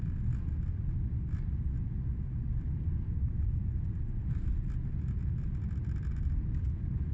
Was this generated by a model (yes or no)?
no